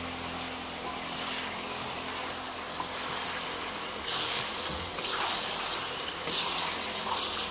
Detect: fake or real real